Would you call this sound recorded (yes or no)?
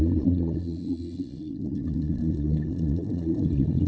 no